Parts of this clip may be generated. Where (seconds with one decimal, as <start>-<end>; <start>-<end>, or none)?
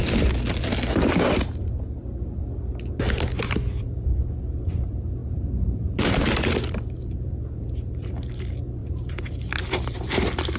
5.2-8.1; 8.8-10.1